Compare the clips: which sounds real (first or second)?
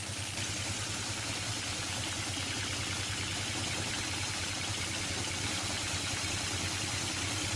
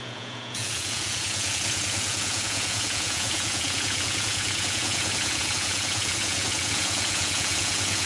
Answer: first